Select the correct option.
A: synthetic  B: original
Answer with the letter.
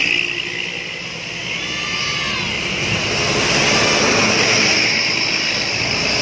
B